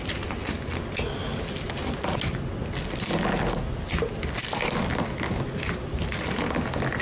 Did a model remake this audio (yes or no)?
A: no